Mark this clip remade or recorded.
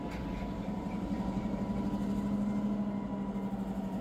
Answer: recorded